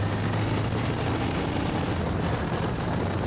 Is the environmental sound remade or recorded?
recorded